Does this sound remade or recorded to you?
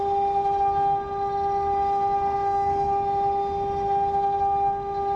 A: recorded